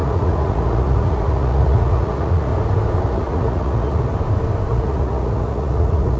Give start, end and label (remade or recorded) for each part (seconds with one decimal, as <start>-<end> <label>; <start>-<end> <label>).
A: 0.0-2.5 remade; 2.5-3.0 recorded; 3.0-4.1 remade; 4.1-4.7 recorded; 4.7-6.2 remade